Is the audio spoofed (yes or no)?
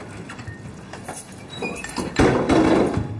no